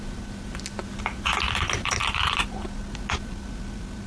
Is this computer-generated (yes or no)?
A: no